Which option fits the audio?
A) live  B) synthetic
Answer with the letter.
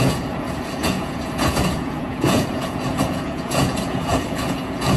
B